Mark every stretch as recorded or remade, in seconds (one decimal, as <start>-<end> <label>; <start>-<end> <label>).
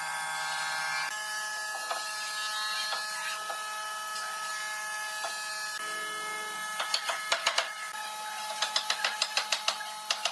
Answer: 0.0-10.3 recorded